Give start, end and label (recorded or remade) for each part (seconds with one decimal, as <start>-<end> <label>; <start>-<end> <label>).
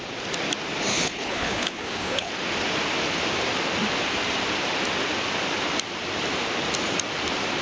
0.0-0.9 recorded; 0.9-2.3 remade; 2.3-7.6 recorded